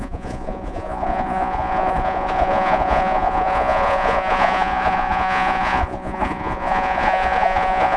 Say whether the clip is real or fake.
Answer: fake